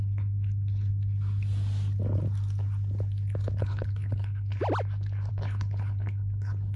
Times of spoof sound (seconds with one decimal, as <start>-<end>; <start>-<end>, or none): 0.0-0.9; 3.6-4.6; 5.3-6.8